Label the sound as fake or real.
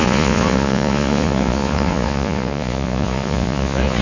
fake